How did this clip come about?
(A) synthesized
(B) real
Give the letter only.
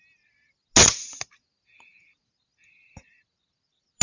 B